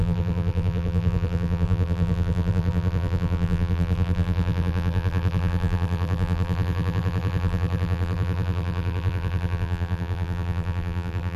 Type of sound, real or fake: fake